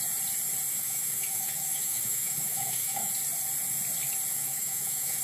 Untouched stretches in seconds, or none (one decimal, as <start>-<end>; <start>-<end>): 0.0-0.7; 3.1-4.3